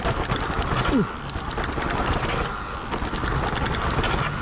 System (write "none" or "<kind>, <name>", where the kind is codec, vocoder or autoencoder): none